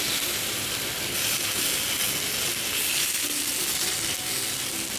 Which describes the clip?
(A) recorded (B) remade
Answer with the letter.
A